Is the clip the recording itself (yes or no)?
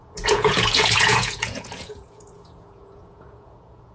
no